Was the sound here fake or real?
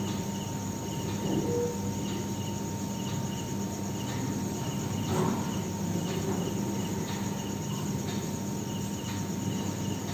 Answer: real